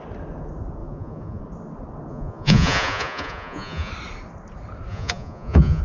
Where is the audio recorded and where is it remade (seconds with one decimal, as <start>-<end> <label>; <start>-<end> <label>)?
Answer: 0.0-0.8 recorded; 0.8-1.4 remade; 1.4-2.1 recorded; 2.1-3.9 remade; 3.9-4.9 recorded; 4.9-5.8 remade